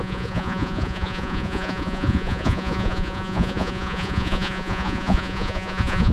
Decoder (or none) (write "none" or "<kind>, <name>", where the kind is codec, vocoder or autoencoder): vocoder, Vocos